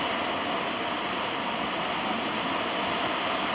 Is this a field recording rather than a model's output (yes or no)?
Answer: yes